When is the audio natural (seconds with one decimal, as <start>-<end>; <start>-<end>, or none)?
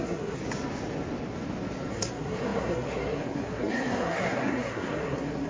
0.4-1.9